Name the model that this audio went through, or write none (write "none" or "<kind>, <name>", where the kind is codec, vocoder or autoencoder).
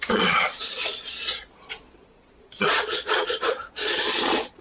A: vocoder, Vocos